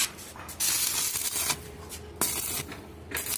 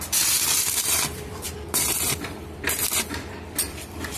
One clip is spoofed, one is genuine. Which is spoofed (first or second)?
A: second